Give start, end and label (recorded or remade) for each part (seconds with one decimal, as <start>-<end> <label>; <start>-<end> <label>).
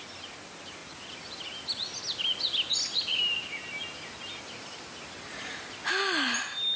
0.0-6.8 recorded